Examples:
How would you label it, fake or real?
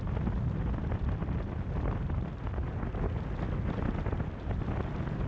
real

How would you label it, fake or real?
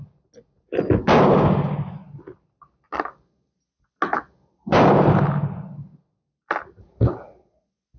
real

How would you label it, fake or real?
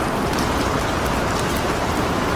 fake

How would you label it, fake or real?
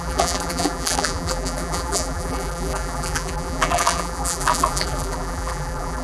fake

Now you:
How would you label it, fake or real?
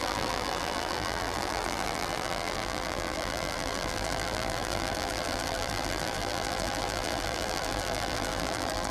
fake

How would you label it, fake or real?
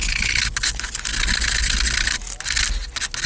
real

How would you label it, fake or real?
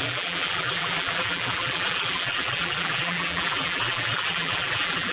fake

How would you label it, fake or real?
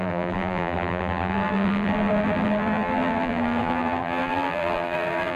fake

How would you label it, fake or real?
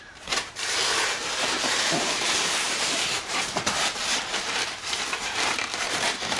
fake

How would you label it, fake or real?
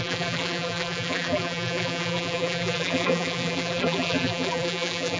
fake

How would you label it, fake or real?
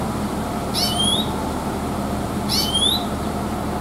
fake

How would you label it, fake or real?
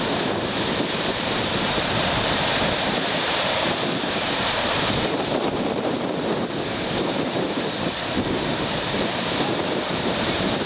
fake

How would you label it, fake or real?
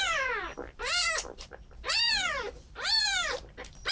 fake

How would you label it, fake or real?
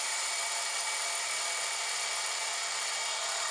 fake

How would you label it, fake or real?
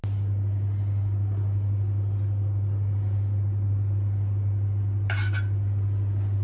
real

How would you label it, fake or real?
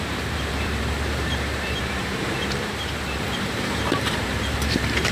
fake